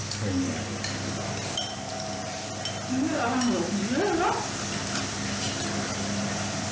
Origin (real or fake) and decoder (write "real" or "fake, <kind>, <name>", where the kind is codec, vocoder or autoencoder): real